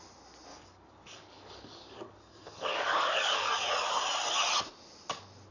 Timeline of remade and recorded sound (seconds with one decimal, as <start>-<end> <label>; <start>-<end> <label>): 0.0-0.5 recorded; 0.5-3.5 remade; 3.5-5.5 recorded